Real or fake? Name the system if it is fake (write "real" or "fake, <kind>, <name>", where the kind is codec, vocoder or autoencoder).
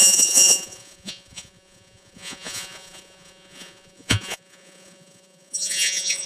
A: fake, vocoder, Vocos